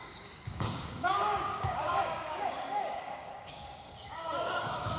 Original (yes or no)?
no